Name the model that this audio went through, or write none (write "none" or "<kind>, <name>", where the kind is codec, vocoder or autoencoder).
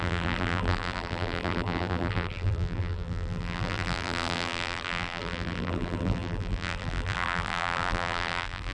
vocoder, BigVGAN v2